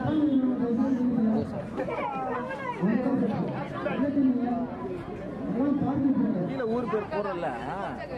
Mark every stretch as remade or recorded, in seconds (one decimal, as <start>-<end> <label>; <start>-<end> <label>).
0.0-2.9 recorded; 2.9-4.3 remade; 4.3-8.2 recorded